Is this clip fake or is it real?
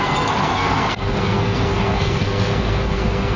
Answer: fake